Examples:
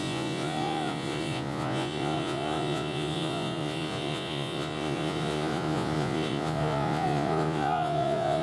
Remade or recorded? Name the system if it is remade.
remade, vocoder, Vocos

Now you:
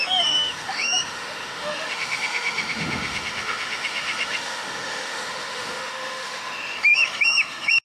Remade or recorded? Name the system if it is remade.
remade, autoencoder, DAC-VAE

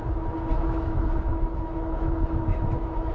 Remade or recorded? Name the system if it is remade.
remade, autoencoder, DAC-VAE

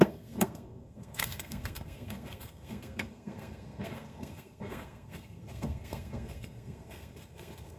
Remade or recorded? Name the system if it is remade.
remade, codec, SNAC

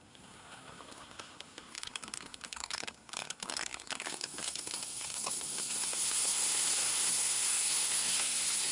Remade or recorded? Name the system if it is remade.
remade, codec, SNAC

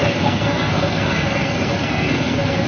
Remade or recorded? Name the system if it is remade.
remade, codec, SNAC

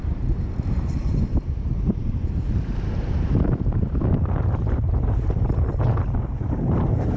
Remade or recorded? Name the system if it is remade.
remade, vocoder, BigVGAN v2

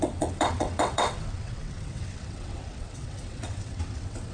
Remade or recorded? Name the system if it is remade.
remade, vocoder, WaveNeXt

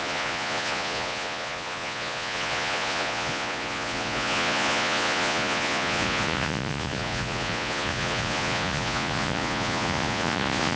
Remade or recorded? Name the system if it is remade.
remade, vocoder, Vocos